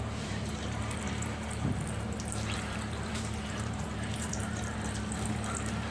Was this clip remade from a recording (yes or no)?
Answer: yes